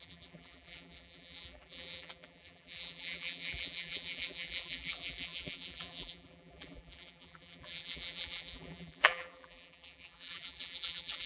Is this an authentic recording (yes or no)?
no